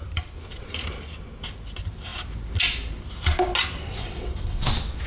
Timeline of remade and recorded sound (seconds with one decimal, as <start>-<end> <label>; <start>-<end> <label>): 0.0-4.0 recorded; 4.0-4.6 remade; 4.6-5.1 recorded